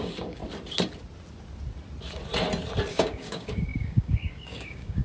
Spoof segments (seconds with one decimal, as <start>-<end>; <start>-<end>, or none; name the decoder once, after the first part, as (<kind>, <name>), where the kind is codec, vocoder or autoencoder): 0.0-0.4 (codec, DAC); 2.9-5.0